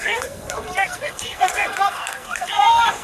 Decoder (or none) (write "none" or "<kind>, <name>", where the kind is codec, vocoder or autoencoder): codec, SNAC